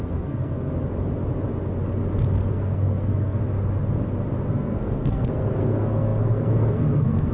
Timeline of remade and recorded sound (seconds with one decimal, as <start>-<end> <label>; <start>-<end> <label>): 0.0-0.7 remade; 0.7-2.5 recorded; 2.5-3.4 remade; 3.4-4.5 recorded; 4.5-7.3 remade